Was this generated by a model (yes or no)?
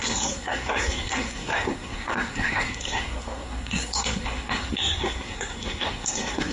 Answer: yes